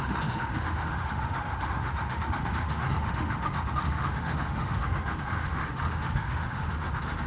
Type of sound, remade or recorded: remade